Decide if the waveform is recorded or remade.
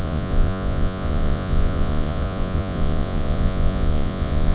remade